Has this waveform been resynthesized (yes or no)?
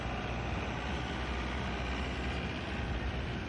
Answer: no